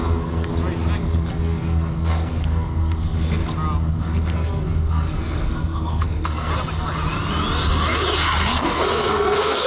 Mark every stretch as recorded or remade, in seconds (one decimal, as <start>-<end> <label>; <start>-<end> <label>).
0.0-0.5 remade; 0.5-1.0 recorded; 1.0-3.4 remade; 3.4-3.9 recorded; 3.9-6.5 remade; 6.5-8.6 recorded; 8.6-9.7 remade